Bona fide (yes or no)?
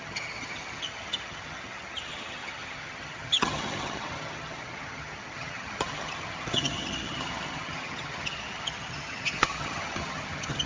no